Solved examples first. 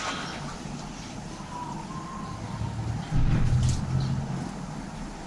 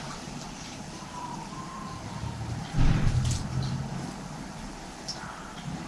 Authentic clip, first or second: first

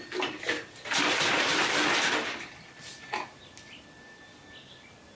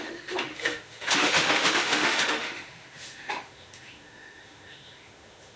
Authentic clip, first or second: first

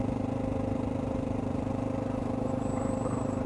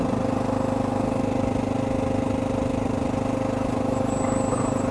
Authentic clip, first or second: second